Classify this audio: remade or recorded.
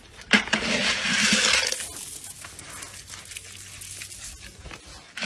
recorded